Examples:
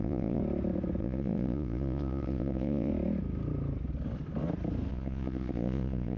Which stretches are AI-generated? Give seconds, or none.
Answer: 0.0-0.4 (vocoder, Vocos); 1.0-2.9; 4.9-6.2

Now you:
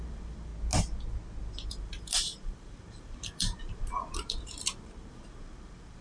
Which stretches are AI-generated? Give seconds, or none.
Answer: 0.0-0.5 (vocoder, BigVGAN v2); 1.7-6.0